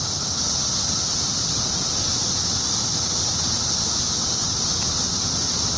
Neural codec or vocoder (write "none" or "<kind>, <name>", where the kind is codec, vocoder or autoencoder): none